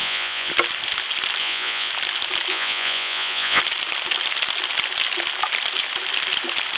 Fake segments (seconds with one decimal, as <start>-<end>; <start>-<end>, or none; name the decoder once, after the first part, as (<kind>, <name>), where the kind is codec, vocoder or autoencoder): 0.0-0.5 (vocoder, Vocos); 1.4-1.9; 2.5-3.6